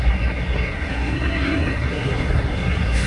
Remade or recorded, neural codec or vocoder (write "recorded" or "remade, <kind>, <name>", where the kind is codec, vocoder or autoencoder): remade, codec, SNAC